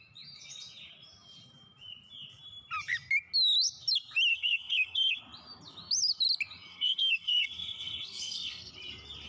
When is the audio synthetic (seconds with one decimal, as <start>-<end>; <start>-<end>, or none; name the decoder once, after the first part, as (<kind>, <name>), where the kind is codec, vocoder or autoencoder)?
4.3-5.2 (codec, SNAC); 6.7-8.7